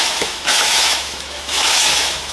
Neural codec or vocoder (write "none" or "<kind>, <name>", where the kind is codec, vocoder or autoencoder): autoencoder, DAC-VAE